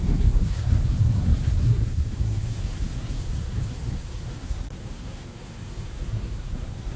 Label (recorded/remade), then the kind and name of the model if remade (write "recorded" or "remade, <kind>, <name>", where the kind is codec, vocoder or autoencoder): remade, codec, SNAC